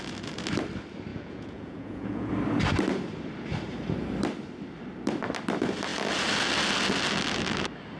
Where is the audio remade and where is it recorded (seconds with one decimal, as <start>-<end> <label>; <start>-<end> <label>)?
0.0-1.1 recorded; 1.1-2.3 remade; 2.3-8.0 recorded